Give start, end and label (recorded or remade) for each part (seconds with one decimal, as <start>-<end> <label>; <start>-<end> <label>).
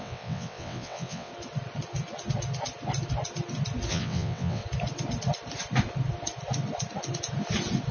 0.0-1.3 remade; 1.3-3.9 recorded; 3.9-4.6 remade; 4.6-7.9 recorded